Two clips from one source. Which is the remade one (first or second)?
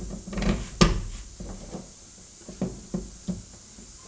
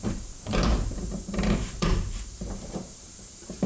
second